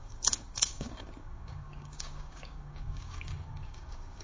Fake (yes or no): yes